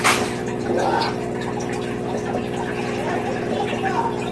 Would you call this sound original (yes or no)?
yes